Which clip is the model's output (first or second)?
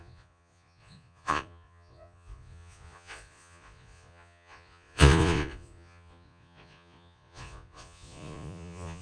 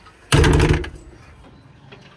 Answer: first